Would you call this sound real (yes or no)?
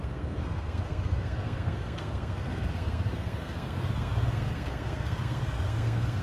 no